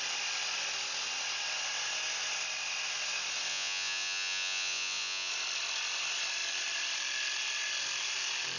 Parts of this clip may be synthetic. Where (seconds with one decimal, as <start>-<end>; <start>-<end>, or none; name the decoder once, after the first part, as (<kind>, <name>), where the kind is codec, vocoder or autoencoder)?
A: 3.5-5.3 (vocoder, Vocos)